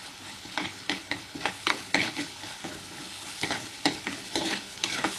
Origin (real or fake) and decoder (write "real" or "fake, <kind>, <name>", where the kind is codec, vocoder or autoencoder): fake, codec, HILCodec